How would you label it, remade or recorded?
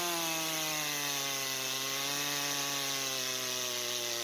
recorded